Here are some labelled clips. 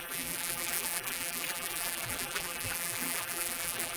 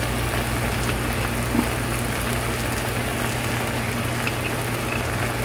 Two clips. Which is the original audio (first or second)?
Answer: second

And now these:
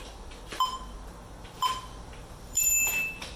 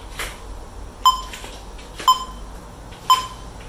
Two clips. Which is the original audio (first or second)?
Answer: second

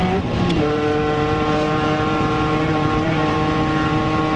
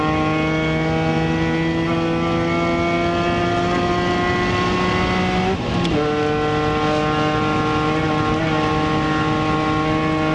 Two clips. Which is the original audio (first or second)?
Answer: second